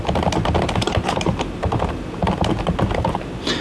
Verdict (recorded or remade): recorded